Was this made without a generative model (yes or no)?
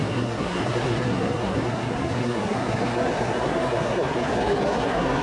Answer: no